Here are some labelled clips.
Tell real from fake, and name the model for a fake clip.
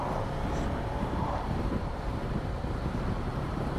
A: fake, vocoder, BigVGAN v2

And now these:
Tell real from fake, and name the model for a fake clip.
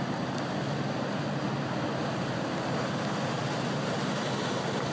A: real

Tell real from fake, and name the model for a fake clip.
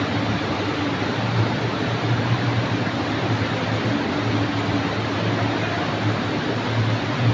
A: real